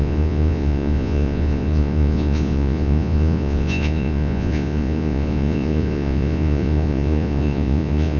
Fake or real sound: fake